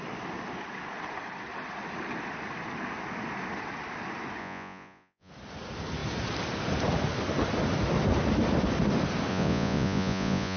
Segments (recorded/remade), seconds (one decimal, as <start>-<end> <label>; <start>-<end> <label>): 0.0-4.4 recorded; 4.4-5.3 remade; 5.3-9.3 recorded; 9.3-10.6 remade